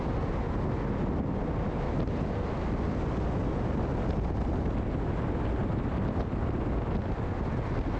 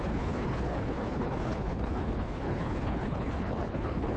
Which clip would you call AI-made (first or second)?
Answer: second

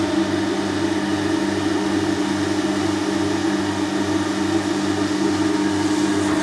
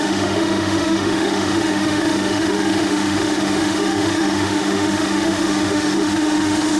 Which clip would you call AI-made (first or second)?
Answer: second